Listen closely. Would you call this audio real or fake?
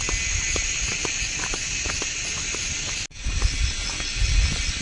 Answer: real